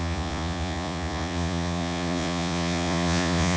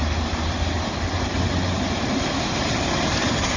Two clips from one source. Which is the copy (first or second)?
first